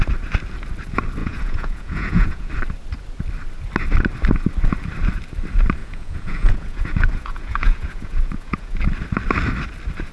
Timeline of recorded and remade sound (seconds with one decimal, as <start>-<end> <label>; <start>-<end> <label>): 0.0-1.2 recorded; 1.2-2.5 remade; 2.5-5.8 recorded; 5.8-8.8 remade; 8.8-10.1 recorded